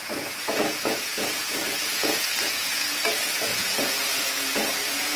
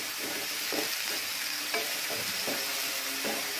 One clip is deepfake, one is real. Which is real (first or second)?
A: second